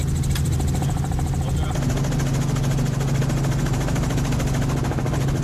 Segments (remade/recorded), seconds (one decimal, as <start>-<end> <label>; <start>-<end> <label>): 0.0-5.4 recorded